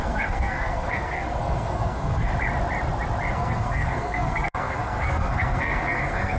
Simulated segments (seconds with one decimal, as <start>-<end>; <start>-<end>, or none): 0.0-2.3; 3.3-6.4